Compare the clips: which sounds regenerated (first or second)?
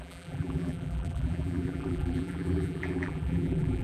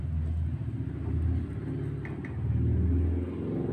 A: first